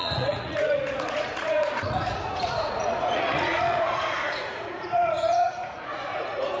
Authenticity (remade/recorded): remade